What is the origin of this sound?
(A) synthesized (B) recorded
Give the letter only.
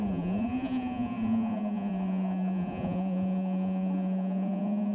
A